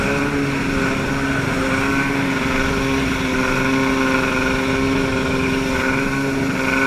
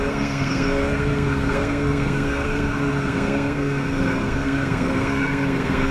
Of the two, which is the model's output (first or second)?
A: second